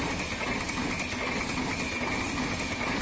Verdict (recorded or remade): recorded